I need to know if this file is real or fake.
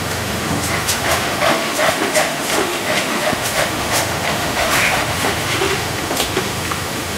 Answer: fake